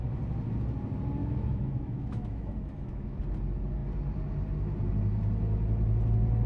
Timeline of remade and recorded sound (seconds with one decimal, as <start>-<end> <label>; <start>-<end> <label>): 0.0-1.2 recorded; 1.2-3.2 remade; 3.2-6.5 recorded